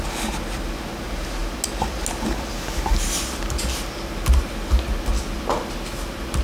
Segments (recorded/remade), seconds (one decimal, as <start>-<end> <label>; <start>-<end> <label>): 0.0-6.4 recorded